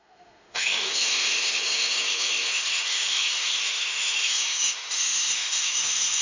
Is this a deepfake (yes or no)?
yes